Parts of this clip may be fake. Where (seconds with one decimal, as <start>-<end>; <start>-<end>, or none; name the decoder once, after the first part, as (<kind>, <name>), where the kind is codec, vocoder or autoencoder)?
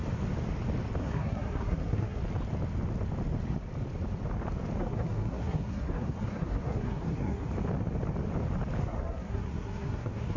1.0-2.2 (codec, SNAC); 4.8-7.5; 8.8-10.4